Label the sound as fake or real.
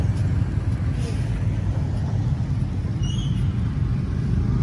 real